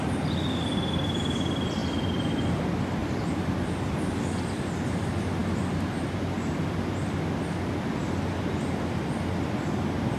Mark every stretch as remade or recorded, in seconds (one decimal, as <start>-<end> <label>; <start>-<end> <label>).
0.0-3.0 recorded; 3.0-4.6 remade; 4.6-10.2 recorded